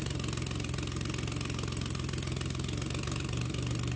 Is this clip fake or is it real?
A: real